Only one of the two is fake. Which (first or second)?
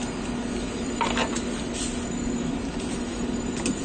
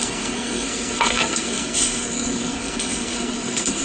second